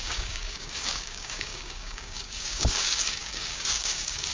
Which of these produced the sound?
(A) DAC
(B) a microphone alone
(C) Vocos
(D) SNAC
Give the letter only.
A